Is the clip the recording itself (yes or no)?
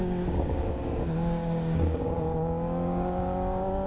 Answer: no